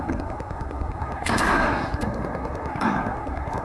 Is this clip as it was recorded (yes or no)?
no